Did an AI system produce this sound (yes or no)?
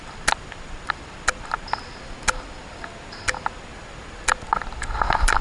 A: no